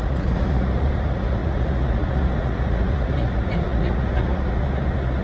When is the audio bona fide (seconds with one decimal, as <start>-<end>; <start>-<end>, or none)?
none